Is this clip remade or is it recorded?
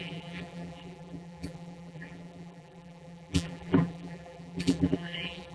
remade